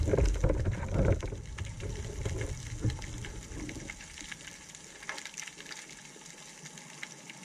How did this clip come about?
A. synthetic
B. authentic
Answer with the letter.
B